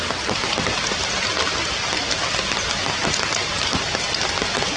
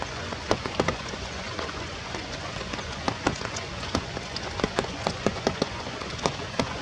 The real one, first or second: first